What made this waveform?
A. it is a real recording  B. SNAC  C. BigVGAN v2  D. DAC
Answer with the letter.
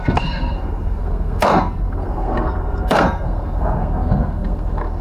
B